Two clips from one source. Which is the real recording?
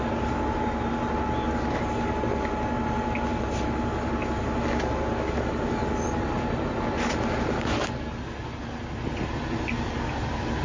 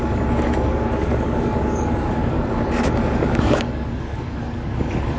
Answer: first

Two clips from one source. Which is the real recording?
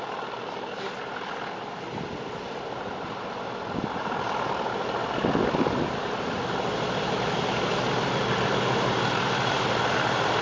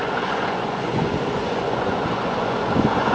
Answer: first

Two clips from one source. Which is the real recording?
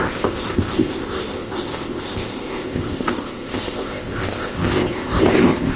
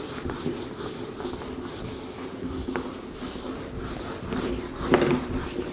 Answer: second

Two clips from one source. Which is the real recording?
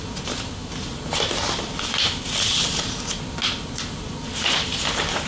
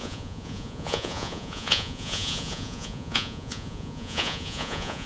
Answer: first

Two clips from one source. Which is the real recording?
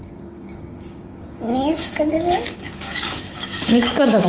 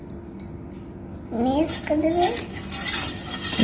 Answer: second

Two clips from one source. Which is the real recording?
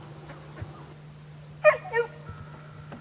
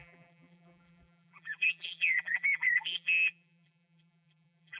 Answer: first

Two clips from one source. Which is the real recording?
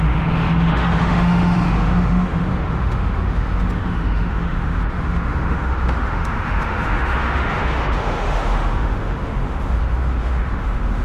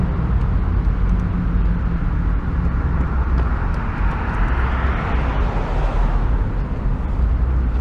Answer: second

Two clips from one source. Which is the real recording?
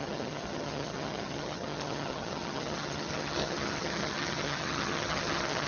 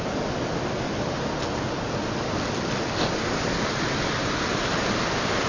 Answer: second